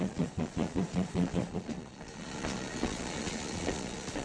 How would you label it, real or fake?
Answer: fake